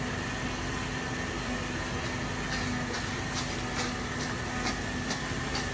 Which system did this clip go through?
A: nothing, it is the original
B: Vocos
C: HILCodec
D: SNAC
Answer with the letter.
A